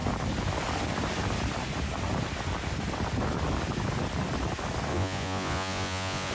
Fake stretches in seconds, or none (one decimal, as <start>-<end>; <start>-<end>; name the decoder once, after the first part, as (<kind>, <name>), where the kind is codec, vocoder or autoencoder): 4.9-6.3 (vocoder, Vocos)